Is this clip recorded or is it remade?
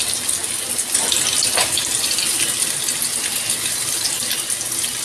remade